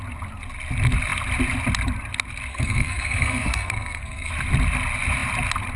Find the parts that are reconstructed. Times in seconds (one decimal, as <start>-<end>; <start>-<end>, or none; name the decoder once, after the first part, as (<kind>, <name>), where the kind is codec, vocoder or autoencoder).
2.5-4.3 (codec, SNAC)